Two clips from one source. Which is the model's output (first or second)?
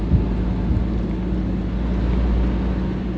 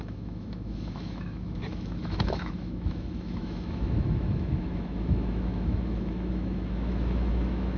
second